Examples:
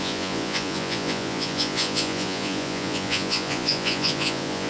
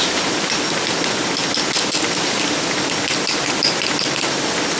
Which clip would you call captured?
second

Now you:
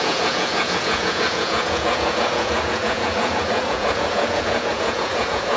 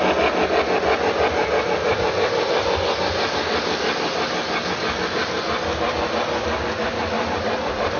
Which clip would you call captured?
second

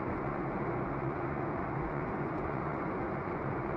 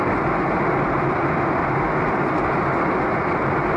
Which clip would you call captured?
second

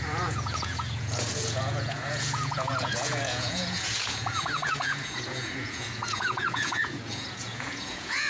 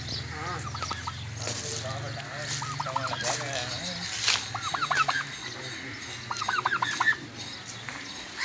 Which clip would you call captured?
second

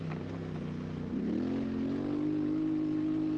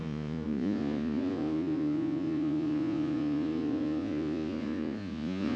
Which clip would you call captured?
first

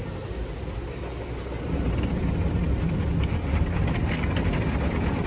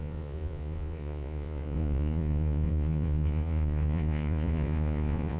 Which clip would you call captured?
first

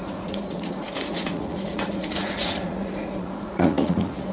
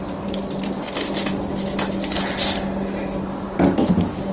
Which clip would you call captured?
second